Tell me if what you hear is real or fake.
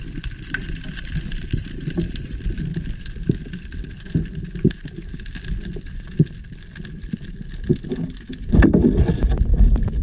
real